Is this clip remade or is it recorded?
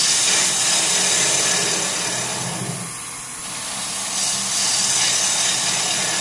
recorded